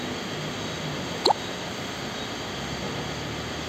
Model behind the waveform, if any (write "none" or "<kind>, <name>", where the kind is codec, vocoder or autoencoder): none